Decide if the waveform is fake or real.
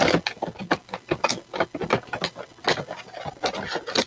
real